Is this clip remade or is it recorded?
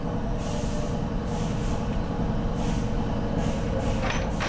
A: recorded